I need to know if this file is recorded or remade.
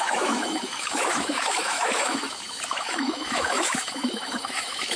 remade